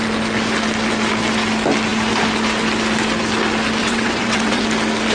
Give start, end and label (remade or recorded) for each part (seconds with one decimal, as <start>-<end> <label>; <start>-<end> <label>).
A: 0.0-3.8 recorded; 3.8-4.6 remade; 4.6-5.1 recorded